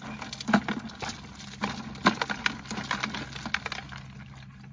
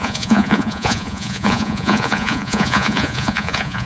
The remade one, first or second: second